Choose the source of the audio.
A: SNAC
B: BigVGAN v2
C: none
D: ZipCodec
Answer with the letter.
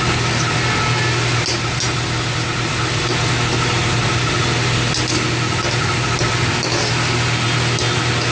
C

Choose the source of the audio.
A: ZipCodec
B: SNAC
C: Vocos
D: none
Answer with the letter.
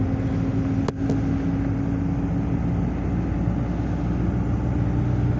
D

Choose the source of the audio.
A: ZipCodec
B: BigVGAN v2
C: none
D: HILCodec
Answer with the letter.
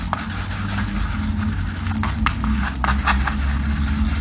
C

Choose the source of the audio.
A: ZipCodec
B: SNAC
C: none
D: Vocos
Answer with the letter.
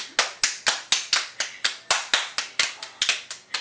C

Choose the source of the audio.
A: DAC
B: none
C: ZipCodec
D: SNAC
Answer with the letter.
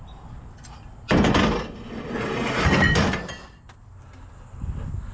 B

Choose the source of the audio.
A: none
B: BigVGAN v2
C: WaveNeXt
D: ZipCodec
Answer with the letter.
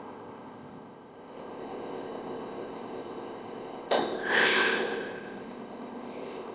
D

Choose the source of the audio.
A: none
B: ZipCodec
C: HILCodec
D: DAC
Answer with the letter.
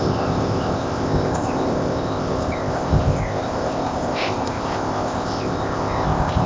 B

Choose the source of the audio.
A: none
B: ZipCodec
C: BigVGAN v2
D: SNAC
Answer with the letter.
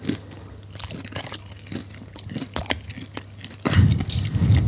A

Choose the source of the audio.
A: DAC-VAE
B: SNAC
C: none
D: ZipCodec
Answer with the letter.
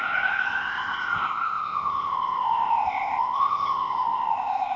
D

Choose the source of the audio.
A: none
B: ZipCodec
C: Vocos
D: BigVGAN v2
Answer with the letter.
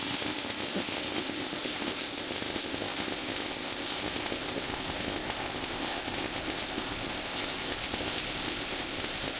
B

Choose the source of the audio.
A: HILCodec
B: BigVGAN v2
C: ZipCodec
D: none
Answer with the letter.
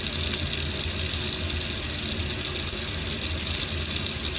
D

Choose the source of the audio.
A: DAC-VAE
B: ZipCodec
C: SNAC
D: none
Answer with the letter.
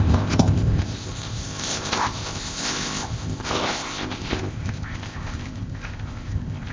B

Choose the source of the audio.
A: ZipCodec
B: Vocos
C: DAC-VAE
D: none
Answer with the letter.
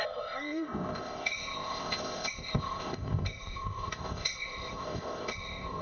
A